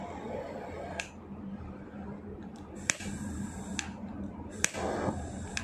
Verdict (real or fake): fake